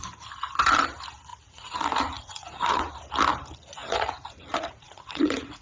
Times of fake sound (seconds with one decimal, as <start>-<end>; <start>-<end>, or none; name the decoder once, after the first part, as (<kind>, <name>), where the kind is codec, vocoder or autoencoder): 1.3-2.9 (vocoder, Vocos); 3.8-5.6